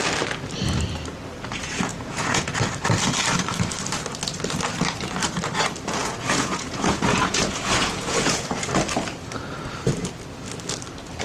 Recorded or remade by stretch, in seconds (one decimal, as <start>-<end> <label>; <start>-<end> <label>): 0.0-1.9 recorded; 1.9-2.5 remade; 2.5-6.0 recorded; 6.0-8.7 remade; 8.7-11.2 recorded